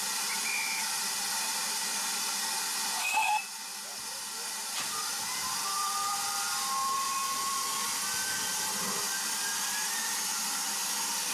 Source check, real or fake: fake